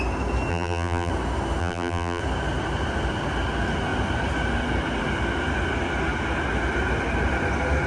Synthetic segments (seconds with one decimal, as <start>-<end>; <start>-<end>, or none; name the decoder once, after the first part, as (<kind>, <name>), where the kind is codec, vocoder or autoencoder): 0.5-1.1 (vocoder, BigVGAN v2); 1.6-2.2